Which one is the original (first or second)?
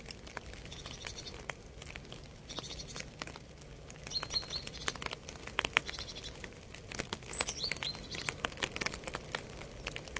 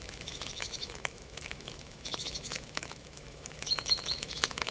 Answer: first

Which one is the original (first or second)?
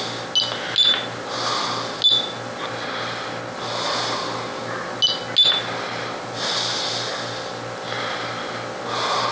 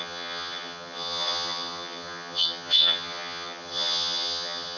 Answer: first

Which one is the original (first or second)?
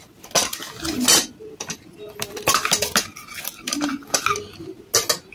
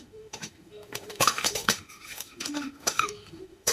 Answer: first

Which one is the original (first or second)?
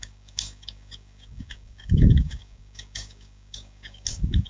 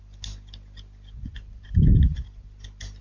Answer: second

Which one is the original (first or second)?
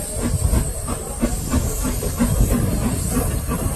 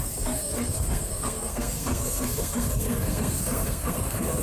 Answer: first